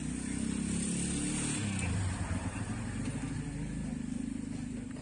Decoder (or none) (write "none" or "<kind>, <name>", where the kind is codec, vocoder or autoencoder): none